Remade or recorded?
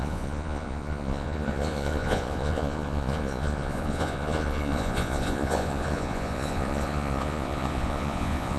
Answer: remade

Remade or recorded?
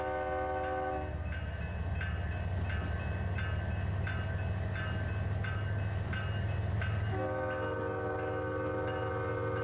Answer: recorded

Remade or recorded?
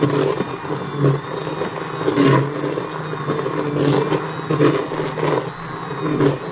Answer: recorded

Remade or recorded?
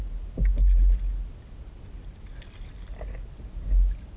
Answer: recorded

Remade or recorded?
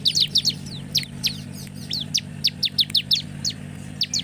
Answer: recorded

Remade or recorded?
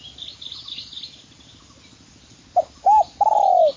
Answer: recorded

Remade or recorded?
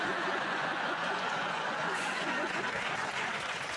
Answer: remade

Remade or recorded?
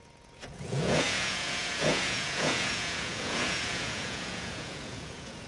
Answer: remade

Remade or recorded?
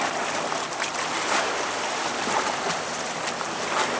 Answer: recorded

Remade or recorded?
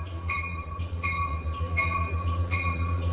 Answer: remade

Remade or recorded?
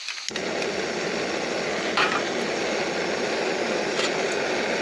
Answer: recorded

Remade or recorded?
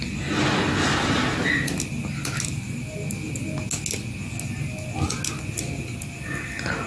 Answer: recorded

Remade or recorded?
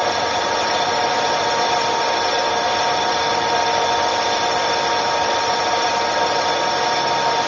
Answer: recorded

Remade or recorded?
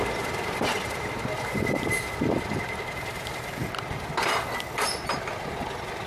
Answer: recorded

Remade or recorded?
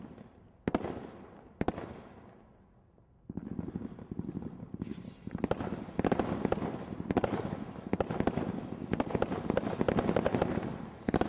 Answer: recorded